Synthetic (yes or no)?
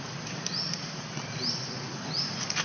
no